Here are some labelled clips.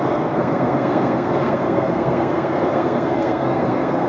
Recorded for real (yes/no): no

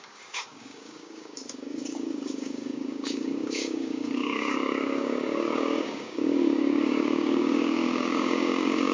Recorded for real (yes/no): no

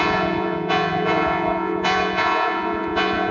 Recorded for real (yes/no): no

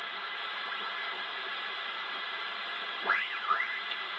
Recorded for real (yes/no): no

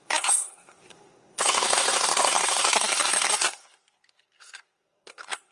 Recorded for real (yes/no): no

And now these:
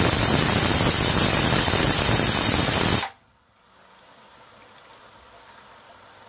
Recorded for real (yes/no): no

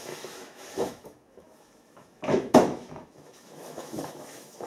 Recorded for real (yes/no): no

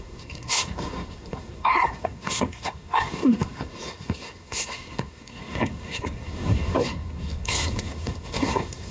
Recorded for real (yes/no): no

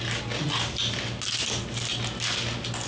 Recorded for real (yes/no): yes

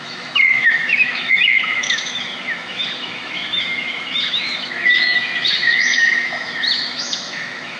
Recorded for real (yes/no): no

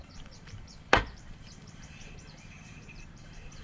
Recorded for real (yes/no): no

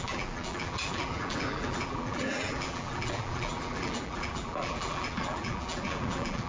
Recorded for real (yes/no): no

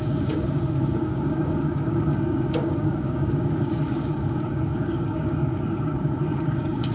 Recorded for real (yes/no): no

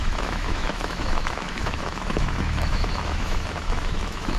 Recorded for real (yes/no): no